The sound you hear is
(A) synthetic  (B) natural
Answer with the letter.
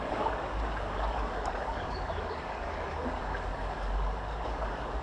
A